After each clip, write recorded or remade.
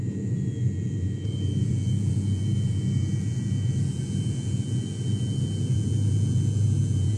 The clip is remade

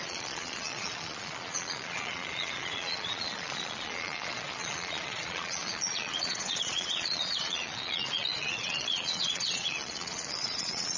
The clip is remade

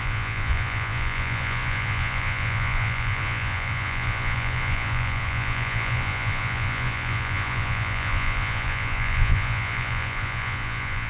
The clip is remade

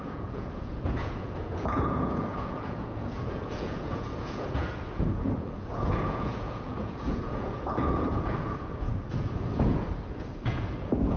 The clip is remade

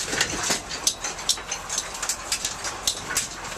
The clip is recorded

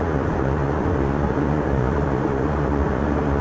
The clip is remade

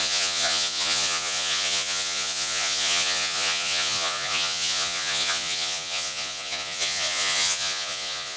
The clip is remade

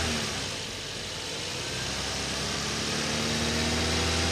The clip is recorded